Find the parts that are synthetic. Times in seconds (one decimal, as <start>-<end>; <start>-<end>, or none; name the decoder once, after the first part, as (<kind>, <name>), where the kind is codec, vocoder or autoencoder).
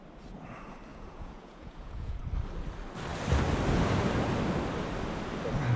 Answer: 0.9-2.2 (vocoder, Vocos)